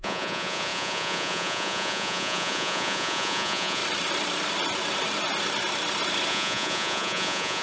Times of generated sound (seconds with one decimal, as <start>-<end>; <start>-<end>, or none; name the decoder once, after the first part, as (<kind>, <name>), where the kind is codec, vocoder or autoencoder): 0.0-3.8 (vocoder, Vocos); 6.3-7.6